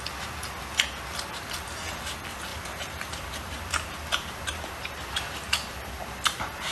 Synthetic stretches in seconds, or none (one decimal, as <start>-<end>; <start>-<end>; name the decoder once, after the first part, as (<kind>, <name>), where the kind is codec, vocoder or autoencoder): 2.5-6.7 (vocoder, BigVGAN v2)